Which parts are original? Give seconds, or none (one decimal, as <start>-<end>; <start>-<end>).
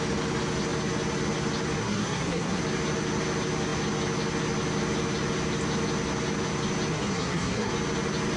0.0-1.8; 2.6-6.9; 7.7-8.4